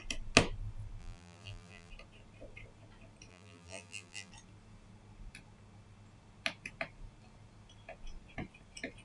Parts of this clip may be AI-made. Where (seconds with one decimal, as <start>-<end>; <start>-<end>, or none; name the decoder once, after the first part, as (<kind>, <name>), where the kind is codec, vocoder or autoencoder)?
1.0-1.9 (vocoder, BigVGAN v2); 3.3-4.3

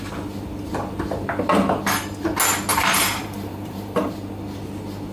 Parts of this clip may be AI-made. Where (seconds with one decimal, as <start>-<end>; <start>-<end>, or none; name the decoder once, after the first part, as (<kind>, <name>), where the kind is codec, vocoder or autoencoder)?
2.7-4.1 (vocoder, BigVGAN v2)

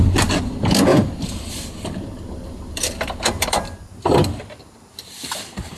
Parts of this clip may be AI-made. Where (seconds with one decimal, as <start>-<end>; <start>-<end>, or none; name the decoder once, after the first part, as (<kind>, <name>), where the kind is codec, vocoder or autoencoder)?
0.9-4.4 (vocoder, BigVGAN v2)

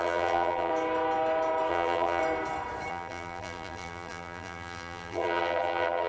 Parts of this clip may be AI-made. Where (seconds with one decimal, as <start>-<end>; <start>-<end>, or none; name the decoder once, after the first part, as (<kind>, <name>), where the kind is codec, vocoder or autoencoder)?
0.0-0.7 (vocoder, BigVGAN v2); 1.7-2.2; 2.9-6.1

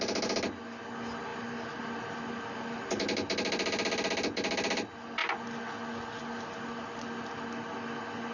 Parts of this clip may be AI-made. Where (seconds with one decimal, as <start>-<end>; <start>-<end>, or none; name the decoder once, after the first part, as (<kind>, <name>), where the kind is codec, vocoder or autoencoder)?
1.3-1.8 (vocoder, BigVGAN v2)

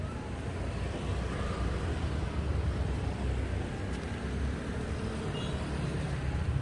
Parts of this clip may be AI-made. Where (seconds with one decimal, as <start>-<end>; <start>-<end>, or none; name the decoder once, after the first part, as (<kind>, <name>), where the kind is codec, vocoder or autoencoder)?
5.9-6.6 (vocoder, BigVGAN v2)

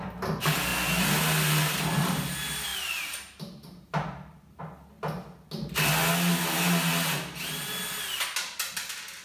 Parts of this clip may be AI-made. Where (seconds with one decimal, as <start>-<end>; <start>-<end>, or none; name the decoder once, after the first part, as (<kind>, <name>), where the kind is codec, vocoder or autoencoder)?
2.7-4.6 (vocoder, BigVGAN v2)

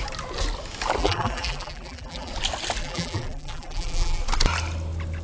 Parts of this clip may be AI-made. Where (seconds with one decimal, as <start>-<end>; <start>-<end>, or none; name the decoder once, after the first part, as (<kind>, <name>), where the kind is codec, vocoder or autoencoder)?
1.0-2.3 (vocoder, BigVGAN v2); 2.8-4.2